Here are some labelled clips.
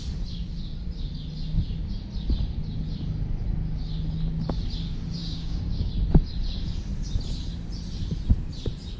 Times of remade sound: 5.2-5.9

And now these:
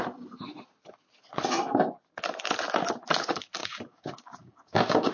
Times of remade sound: 3.6-5.1

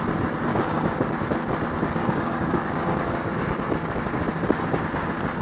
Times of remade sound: 0.5-1.1; 2.0-3.3